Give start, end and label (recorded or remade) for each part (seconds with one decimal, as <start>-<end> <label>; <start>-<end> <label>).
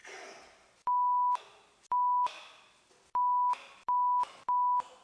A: 0.0-5.0 recorded